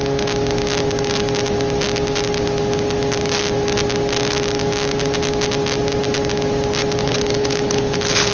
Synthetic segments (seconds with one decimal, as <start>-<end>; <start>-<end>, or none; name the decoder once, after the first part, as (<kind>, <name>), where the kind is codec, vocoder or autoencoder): 7.0-8.3 (codec, HILCodec)